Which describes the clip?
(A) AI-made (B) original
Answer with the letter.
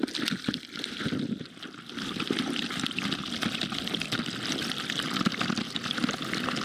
B